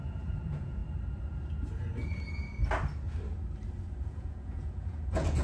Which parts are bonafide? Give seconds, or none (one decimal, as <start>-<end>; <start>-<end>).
0.8-4.0